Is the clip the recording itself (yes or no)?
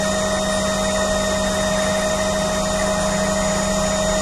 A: yes